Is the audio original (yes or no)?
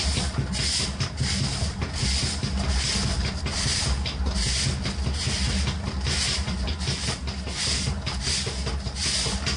yes